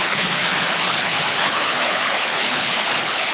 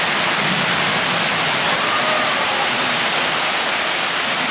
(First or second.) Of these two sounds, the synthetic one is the first